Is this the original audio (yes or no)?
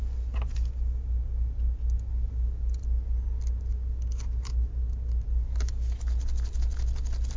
yes